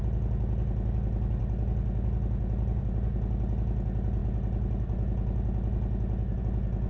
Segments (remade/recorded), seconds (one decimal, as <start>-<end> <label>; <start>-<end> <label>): 0.0-6.9 recorded